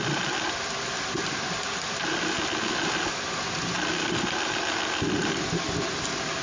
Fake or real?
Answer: real